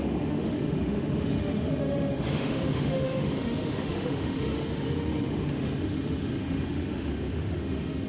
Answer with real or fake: fake